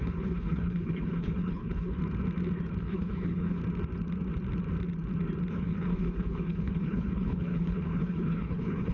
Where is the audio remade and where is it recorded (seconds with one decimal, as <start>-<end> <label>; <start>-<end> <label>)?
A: 0.0-2.0 remade; 2.0-2.8 recorded; 2.8-3.6 remade; 3.6-5.5 recorded; 5.5-8.9 remade